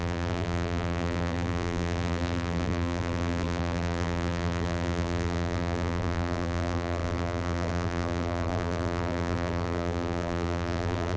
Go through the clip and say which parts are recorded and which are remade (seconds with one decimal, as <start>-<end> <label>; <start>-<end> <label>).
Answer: 0.0-11.2 remade